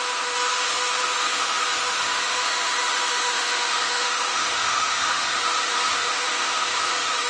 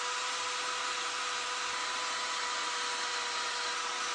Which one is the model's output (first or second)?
first